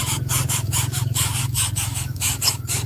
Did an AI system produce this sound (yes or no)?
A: yes